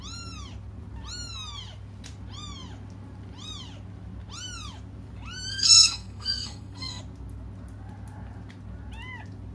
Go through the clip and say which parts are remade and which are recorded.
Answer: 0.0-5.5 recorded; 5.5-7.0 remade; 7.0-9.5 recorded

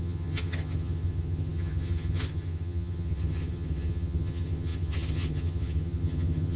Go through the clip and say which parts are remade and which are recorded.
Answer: 0.0-6.6 remade

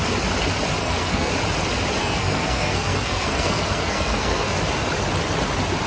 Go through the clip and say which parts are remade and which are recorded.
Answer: 0.0-0.8 recorded; 0.8-1.3 remade; 1.3-2.0 recorded; 2.0-4.6 remade; 4.6-5.9 recorded

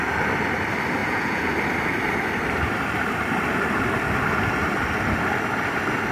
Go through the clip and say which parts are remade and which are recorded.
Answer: 0.0-1.0 recorded; 1.0-1.5 remade; 1.5-6.1 recorded

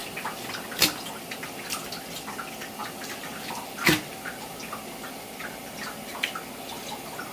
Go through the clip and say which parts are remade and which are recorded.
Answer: 0.0-1.1 remade; 1.1-2.8 recorded; 2.8-4.1 remade; 4.1-7.3 recorded

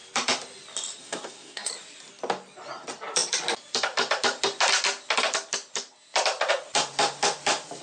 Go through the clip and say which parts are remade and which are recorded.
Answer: 0.0-1.0 recorded; 1.0-1.7 remade; 1.7-7.8 recorded

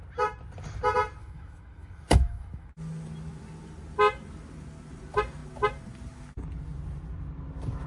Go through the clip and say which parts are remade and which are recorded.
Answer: 0.0-1.2 recorded; 1.2-2.7 remade; 2.7-7.9 recorded

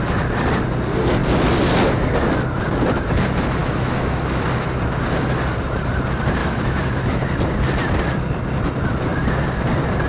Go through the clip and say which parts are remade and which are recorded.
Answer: 0.0-3.6 recorded; 3.6-4.4 remade; 4.4-6.4 recorded; 6.4-7.2 remade; 7.2-10.1 recorded